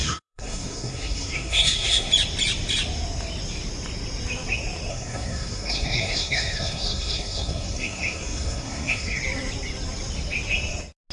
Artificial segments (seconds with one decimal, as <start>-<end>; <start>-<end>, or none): 0.0-2.1; 4.9-9.2